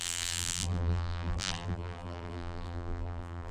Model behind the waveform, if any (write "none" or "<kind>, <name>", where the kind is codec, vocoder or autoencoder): vocoder, BigVGAN v2